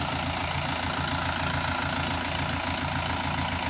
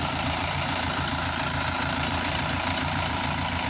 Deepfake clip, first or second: second